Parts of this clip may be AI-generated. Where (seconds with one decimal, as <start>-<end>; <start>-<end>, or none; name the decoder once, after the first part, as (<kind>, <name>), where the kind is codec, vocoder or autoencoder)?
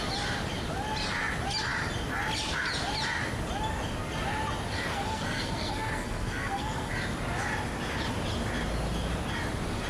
4.9-6.9 (codec, SNAC)